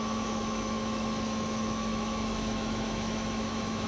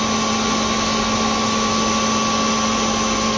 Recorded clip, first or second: second